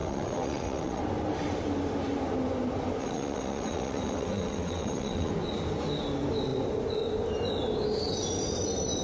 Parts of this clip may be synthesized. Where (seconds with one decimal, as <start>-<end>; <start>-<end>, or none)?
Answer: 0.0-1.0; 3.0-5.3